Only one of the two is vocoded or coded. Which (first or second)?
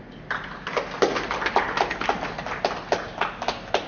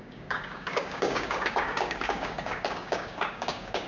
second